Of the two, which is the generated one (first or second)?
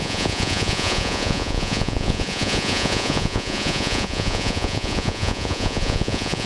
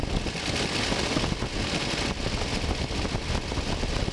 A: first